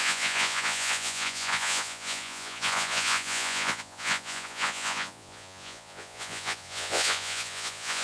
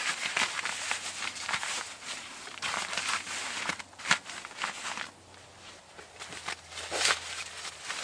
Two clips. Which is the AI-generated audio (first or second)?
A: first